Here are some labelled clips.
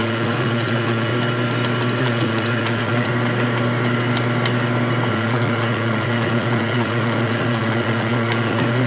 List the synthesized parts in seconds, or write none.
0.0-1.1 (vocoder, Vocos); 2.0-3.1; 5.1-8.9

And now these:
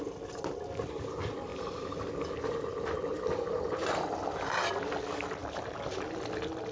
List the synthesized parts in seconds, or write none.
none